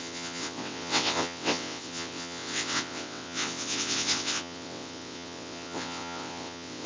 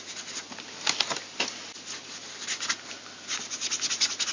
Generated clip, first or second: first